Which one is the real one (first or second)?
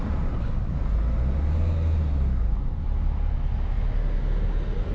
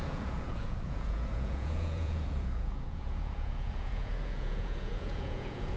first